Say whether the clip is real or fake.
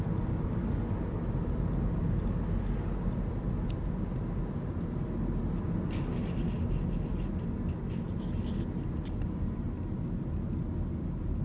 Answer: real